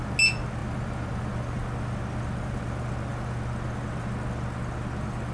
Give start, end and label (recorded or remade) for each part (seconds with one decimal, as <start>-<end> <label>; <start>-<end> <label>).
0.0-0.6 recorded; 0.6-1.2 remade; 1.2-5.3 recorded